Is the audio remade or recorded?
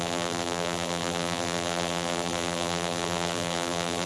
remade